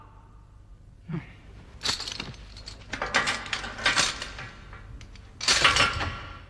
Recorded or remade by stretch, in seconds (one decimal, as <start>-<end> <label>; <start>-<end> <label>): 0.0-6.5 recorded